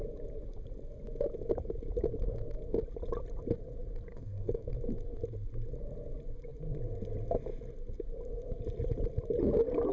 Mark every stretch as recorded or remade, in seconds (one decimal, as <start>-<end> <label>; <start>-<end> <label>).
0.0-4.1 recorded; 4.1-4.7 remade; 4.7-9.9 recorded